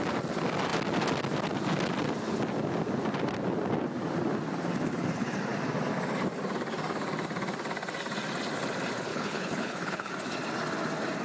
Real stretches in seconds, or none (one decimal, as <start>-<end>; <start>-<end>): 0.0-9.1; 10.1-11.2